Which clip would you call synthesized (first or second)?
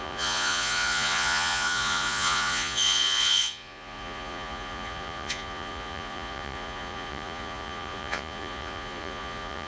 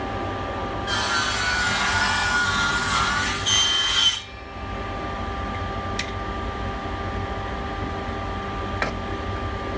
first